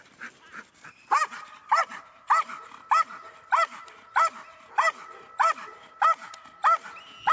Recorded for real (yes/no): yes